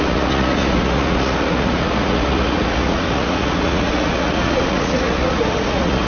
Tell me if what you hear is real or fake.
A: fake